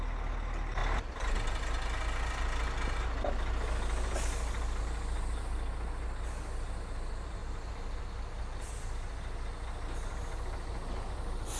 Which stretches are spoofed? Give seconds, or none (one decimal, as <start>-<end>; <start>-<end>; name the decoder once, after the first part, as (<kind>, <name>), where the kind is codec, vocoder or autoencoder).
none